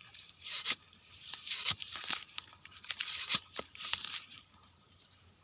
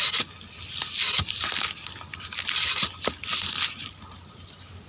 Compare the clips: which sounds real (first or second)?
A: second